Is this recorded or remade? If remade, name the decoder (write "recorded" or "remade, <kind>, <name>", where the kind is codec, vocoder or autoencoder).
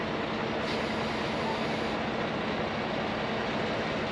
recorded